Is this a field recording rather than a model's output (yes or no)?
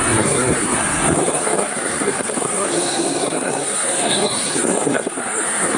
no